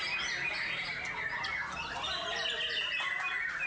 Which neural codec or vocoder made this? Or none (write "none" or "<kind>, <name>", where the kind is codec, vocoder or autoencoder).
none